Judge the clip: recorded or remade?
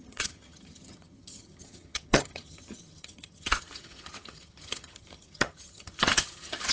remade